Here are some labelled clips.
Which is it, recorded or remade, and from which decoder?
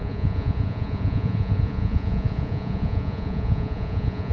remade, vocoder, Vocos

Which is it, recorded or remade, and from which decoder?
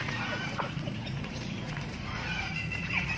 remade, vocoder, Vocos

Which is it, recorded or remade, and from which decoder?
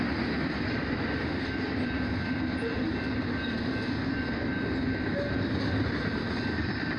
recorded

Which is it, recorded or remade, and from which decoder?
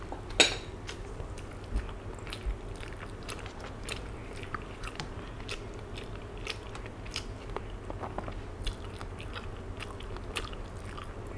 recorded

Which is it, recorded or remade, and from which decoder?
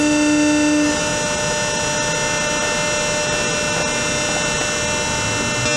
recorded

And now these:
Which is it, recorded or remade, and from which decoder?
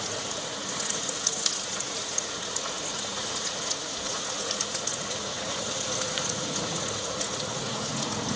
remade, vocoder, Vocos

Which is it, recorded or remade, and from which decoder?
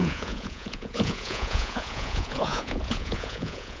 remade, vocoder, Vocos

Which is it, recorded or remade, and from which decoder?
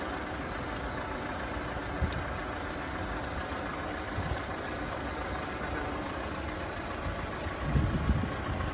recorded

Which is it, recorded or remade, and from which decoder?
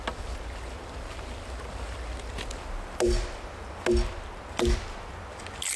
recorded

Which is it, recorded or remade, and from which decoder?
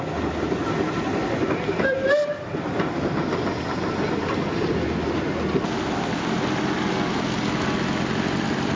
recorded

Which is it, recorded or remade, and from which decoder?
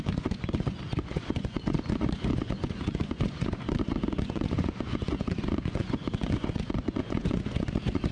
remade, vocoder, Vocos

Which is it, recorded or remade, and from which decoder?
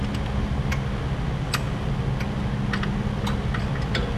recorded